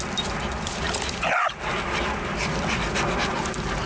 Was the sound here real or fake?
real